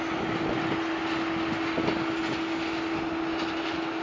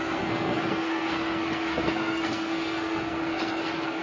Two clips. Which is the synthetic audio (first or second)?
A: second